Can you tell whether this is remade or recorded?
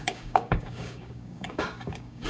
remade